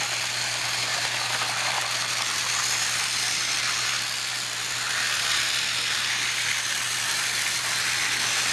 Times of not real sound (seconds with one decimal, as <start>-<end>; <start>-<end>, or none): none